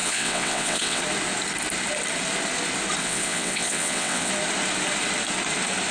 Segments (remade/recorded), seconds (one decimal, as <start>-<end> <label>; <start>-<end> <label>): 0.0-1.0 remade; 1.0-3.0 recorded; 3.0-4.3 remade; 4.3-5.9 recorded